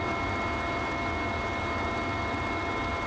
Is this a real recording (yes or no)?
yes